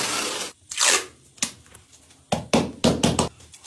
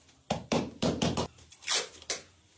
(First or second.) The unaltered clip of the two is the first